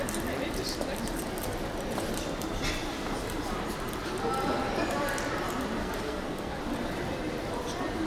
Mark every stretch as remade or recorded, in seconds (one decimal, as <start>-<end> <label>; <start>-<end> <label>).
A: 0.0-5.8 recorded; 5.8-6.6 remade; 6.6-8.1 recorded

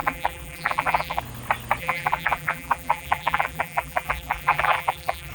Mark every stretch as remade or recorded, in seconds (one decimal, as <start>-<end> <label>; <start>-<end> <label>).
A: 0.0-1.2 remade; 1.2-1.8 recorded; 1.8-5.3 remade

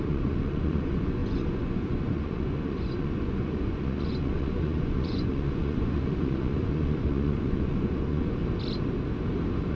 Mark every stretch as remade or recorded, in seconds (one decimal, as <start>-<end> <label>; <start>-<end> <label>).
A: 0.0-8.4 remade; 8.4-9.7 recorded

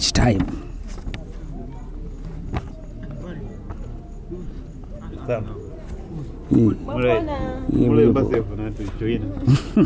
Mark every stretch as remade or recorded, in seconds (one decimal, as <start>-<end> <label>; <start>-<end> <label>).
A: 0.0-9.9 recorded

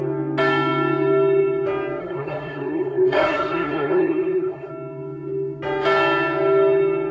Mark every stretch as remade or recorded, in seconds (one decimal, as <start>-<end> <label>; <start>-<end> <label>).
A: 0.0-2.0 recorded; 2.0-4.7 remade; 4.7-7.1 recorded

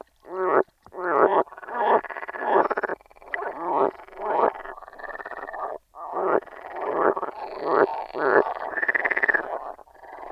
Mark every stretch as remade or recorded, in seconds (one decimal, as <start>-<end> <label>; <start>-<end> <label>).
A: 0.0-0.7 recorded; 0.7-2.2 remade; 2.2-7.9 recorded; 7.9-9.0 remade; 9.0-10.3 recorded

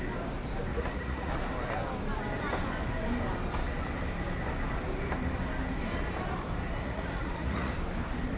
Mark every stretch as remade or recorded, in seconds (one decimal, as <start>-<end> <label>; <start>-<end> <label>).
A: 0.0-0.7 recorded; 0.7-1.3 remade; 1.3-6.8 recorded; 6.8-7.7 remade; 7.7-8.4 recorded